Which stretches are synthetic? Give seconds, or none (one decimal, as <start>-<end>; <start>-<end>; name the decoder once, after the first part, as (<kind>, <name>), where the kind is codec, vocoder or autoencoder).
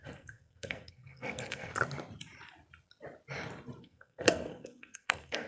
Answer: 0.0-1.7 (codec, SNAC); 3.8-5.5